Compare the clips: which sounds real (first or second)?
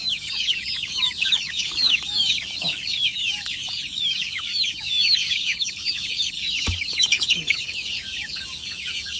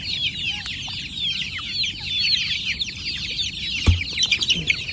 second